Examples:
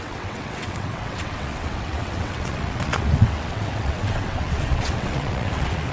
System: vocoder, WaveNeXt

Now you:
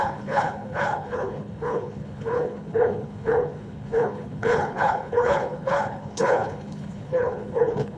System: codec, HILCodec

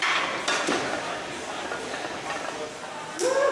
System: none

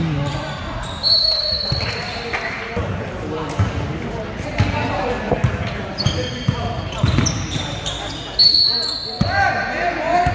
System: none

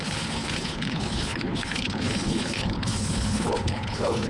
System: codec, HILCodec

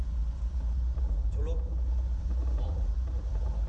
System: none